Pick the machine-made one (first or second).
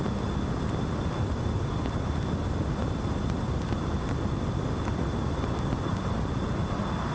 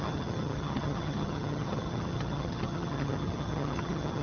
second